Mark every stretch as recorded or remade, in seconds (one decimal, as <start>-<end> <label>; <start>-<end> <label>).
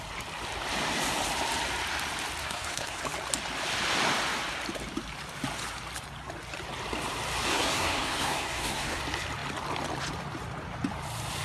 0.0-2.4 recorded; 2.4-3.0 remade; 3.0-7.5 recorded; 7.5-9.0 remade; 9.0-11.4 recorded